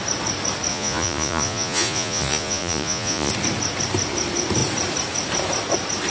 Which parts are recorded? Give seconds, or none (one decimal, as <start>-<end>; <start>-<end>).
0.0-0.7; 3.3-6.1